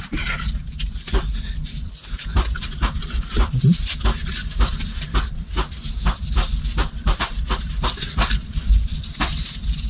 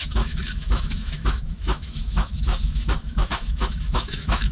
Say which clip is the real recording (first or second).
first